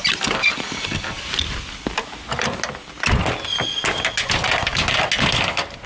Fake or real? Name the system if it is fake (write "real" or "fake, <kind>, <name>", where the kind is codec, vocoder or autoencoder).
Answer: real